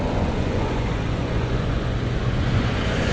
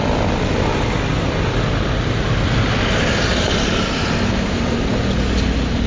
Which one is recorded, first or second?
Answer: second